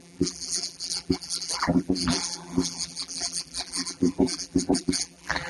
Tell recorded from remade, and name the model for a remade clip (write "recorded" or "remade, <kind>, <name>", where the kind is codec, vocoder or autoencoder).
remade, vocoder, BigVGAN v2